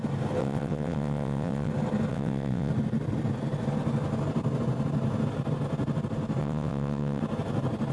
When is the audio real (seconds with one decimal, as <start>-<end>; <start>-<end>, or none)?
0.0-0.4; 1.7-2.1; 2.7-6.4; 7.2-7.9